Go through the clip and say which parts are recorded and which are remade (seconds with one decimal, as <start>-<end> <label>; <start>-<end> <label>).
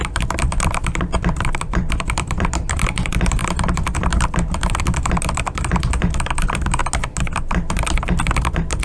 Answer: 0.0-6.8 remade; 6.8-7.8 recorded; 7.8-8.8 remade